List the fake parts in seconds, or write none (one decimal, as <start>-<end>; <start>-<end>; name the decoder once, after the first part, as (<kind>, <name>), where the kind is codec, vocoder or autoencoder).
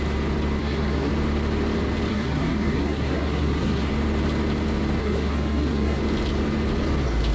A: 0.6-1.1 (codec, SNAC); 2.1-3.9; 5.0-6.0